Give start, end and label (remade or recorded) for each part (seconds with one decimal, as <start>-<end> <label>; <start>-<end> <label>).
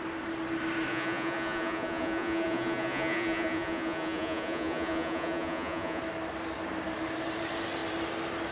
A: 0.0-0.9 recorded; 0.9-6.0 remade; 6.0-8.5 recorded